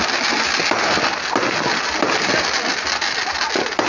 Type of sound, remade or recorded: recorded